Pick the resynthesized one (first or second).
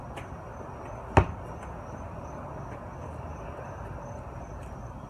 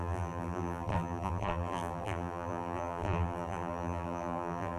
second